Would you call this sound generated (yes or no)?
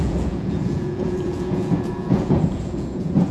yes